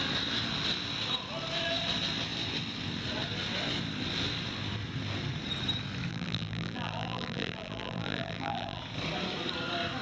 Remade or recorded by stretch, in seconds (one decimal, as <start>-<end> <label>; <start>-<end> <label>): 0.0-6.1 recorded; 6.1-8.8 remade; 8.8-10.0 recorded